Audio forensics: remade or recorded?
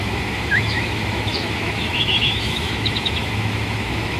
remade